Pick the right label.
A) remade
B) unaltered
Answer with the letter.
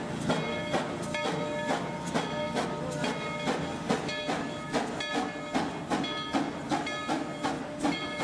B